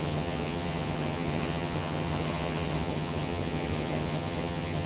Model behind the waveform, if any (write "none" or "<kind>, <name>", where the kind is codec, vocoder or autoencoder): vocoder, HiFi-GAN